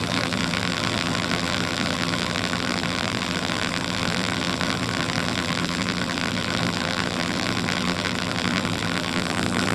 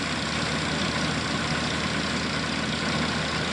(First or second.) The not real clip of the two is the first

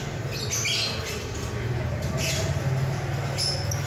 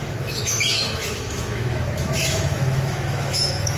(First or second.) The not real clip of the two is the second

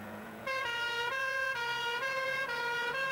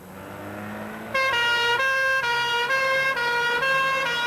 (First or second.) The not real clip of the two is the first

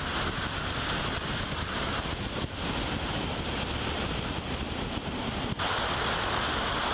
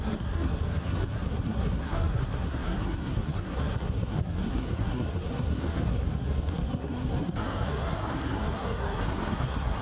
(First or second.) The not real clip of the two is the second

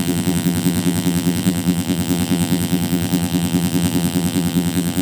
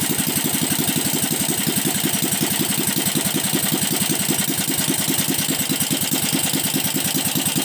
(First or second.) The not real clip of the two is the first